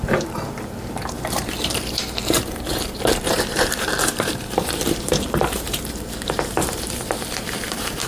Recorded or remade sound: remade